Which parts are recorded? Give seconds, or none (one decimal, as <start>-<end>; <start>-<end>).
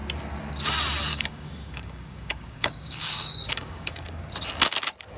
0.0-1.1; 4.2-5.2